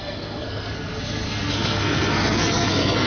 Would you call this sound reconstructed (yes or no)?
yes